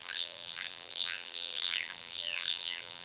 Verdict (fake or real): fake